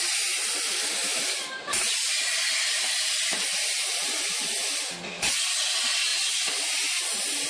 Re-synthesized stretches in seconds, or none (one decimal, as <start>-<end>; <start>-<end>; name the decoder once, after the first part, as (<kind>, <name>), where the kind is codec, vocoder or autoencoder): 1.1-2.4 (vocoder, BigVGAN v2); 3.5-4.8